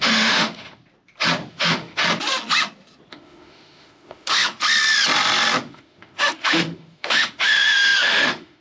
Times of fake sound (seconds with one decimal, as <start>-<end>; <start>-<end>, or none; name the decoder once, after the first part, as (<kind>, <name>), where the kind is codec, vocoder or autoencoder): 0.0-0.8 (autoencoder, DAC-VAE); 1.5-2.0; 3.1-4.6; 5.6-8.6

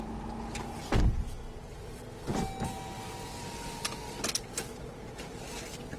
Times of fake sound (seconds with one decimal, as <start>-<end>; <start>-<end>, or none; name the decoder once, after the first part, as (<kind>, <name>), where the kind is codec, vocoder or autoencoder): none

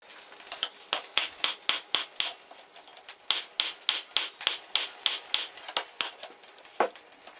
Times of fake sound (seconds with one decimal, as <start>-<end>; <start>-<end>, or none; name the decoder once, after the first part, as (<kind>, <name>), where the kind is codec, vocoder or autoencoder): 1.0-1.5 (autoencoder, DAC-VAE)

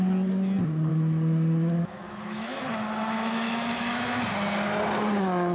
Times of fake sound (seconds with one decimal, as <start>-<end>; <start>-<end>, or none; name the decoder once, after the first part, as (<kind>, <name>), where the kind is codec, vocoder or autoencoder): 0.9-4.2 (autoencoder, DAC-VAE)

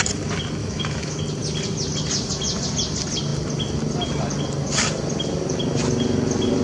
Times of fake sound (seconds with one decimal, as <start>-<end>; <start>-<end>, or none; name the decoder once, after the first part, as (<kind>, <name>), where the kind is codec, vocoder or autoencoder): 0.6-1.2 (autoencoder, DAC-VAE)

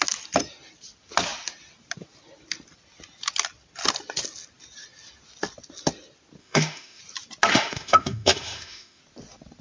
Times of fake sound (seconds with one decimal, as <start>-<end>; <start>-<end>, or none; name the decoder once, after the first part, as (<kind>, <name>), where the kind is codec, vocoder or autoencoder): 6.4-7.0 (autoencoder, DAC-VAE); 7.5-9.0

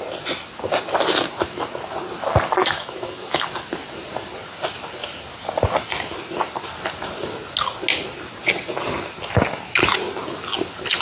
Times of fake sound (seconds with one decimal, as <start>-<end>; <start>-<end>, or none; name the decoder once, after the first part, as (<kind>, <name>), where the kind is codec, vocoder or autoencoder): 2.6-3.5 (autoencoder, DAC-VAE)